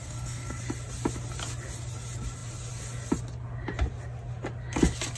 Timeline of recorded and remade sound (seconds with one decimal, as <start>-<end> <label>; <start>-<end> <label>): 0.0-0.6 remade; 0.6-5.2 recorded